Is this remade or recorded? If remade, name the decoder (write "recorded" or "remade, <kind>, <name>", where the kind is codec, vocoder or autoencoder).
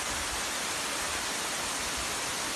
recorded